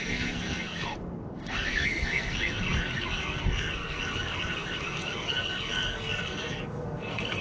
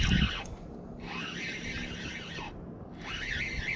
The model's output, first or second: first